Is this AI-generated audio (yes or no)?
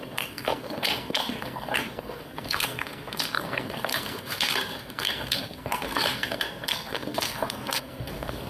yes